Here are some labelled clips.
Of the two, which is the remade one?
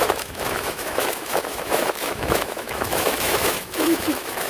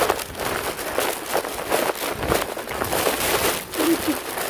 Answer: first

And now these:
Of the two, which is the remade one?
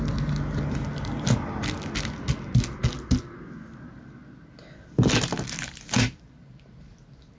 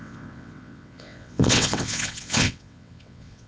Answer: second